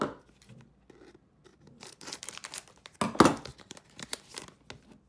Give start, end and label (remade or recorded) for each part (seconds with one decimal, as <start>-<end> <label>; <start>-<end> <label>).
0.0-1.5 recorded; 1.5-2.2 remade; 2.2-3.5 recorded; 3.5-4.4 remade; 4.4-5.1 recorded